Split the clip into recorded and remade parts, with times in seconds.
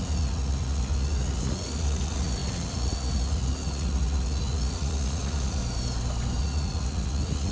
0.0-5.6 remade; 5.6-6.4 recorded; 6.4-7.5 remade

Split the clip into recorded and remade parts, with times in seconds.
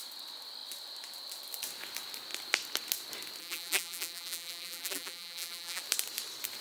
0.0-3.4 recorded; 3.4-5.8 remade; 5.8-6.6 recorded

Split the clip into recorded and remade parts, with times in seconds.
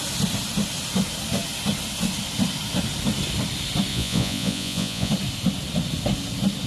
0.0-3.9 recorded; 3.9-5.1 remade; 5.1-6.7 recorded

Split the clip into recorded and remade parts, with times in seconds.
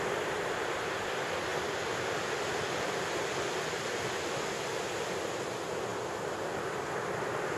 0.0-7.6 recorded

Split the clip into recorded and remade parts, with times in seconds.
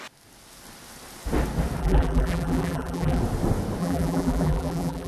0.0-1.8 recorded; 1.8-3.2 remade; 3.2-3.8 recorded; 3.8-5.1 remade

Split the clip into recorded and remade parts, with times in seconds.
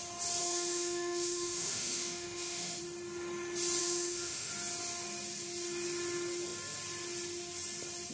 0.0-0.4 recorded; 0.4-2.8 remade; 2.8-3.8 recorded; 3.8-4.5 remade; 4.5-8.1 recorded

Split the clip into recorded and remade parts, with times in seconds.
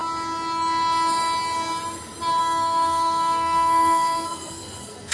0.0-2.4 recorded; 2.4-5.1 remade